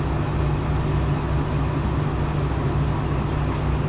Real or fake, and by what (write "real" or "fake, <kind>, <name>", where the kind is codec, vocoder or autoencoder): real